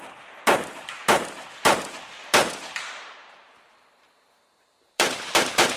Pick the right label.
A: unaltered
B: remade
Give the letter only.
B